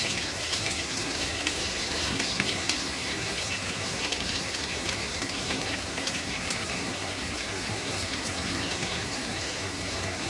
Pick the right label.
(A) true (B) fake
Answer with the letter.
B